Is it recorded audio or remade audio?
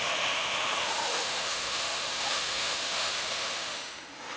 remade